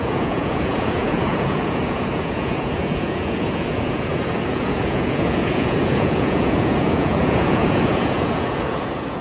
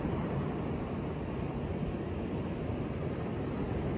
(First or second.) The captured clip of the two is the second